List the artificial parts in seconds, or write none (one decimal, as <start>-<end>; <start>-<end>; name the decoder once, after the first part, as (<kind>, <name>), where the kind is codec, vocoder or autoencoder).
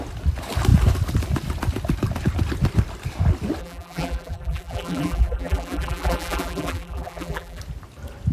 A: 3.6-7.6 (vocoder, BigVGAN v2)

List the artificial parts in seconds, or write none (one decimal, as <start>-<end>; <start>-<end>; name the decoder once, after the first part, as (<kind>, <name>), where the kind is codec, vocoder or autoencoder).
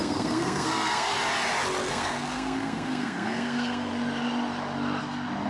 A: 0.0-1.1 (codec, SNAC); 1.9-3.9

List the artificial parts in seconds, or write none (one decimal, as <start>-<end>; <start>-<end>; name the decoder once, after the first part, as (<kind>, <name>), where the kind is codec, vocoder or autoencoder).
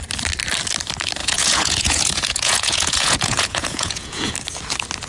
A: 1.2-4.3 (vocoder, Vocos)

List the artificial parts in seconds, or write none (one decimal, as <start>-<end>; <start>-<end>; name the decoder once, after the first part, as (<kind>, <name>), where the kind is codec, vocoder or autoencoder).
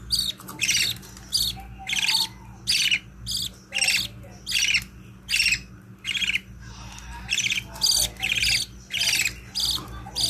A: none